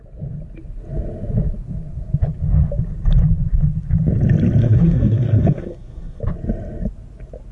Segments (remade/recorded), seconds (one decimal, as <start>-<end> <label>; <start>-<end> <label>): 0.0-4.6 recorded; 4.6-6.2 remade; 6.2-7.5 recorded

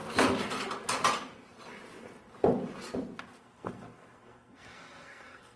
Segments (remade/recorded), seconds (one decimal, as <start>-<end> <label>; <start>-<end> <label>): 0.0-3.4 recorded; 3.4-5.6 remade

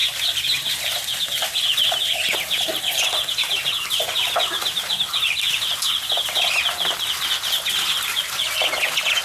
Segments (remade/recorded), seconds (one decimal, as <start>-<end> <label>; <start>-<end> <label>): 0.0-9.2 recorded

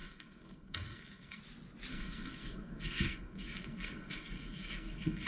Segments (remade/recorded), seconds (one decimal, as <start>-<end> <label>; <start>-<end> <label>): 0.0-1.4 remade; 1.4-1.9 recorded; 1.9-5.3 remade

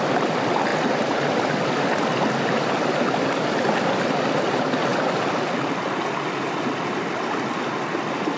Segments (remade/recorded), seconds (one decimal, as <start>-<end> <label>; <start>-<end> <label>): 0.0-8.4 recorded

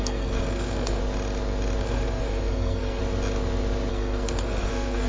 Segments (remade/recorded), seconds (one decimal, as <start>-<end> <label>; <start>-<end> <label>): 0.0-1.0 remade; 1.0-1.8 recorded; 1.8-3.0 remade; 3.0-3.9 recorded; 3.9-5.1 remade

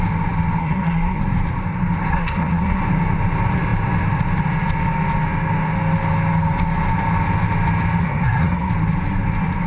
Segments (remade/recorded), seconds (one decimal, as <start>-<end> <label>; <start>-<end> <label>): 0.0-0.6 recorded; 0.6-1.2 remade; 1.2-2.1 recorded; 2.1-2.8 remade; 2.8-8.0 recorded; 8.0-8.7 remade; 8.7-9.7 recorded